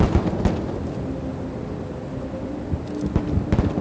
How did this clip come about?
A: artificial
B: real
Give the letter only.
B